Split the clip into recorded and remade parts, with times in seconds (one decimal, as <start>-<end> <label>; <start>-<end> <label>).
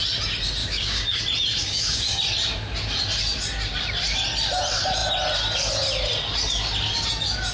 0.0-0.6 recorded; 0.6-1.2 remade; 1.2-1.6 recorded; 1.6-2.2 remade; 2.2-7.5 recorded